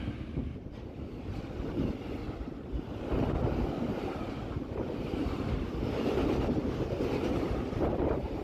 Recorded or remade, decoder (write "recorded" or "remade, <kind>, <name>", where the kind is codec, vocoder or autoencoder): recorded